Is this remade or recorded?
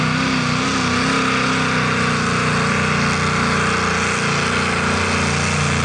recorded